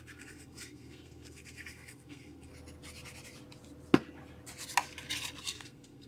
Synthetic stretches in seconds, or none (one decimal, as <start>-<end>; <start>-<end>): 0.0-2.5; 5.4-6.1